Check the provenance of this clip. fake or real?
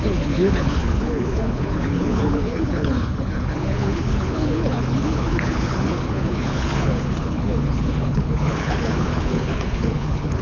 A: fake